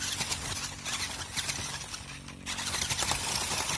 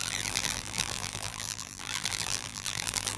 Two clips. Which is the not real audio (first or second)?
second